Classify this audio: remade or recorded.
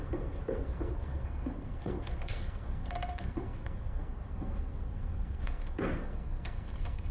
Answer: remade